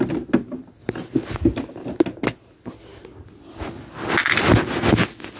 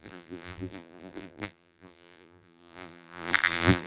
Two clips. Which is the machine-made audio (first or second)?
second